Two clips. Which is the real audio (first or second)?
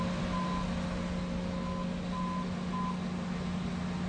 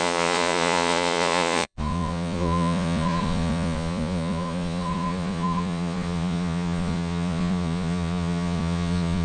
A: first